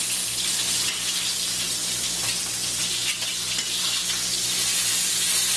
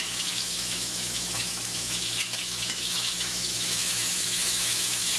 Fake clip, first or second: second